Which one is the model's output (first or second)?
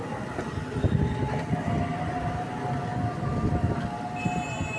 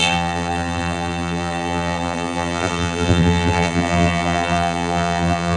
second